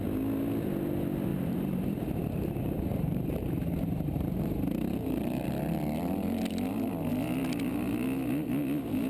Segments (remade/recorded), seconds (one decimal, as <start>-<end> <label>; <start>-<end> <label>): 0.0-1.3 recorded; 1.3-5.5 remade; 5.5-9.1 recorded